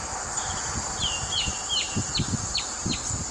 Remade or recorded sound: remade